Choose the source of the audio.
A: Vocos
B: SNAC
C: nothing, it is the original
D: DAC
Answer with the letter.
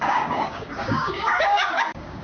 D